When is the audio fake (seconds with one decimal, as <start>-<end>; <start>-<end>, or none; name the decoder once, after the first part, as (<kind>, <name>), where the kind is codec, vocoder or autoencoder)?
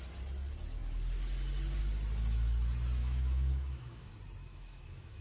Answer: 3.0-4.1 (autoencoder, DAC-VAE); 4.5-5.2